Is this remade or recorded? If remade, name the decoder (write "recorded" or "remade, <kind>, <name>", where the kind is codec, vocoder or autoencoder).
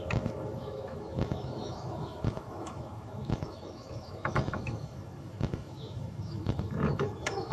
remade, autoencoder, DAC-VAE